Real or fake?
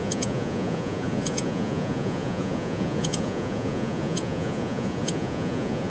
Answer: fake